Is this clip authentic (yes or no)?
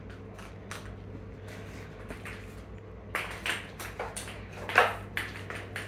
yes